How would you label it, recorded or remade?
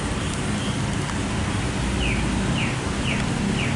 recorded